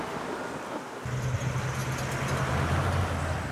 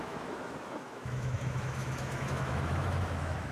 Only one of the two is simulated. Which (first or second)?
second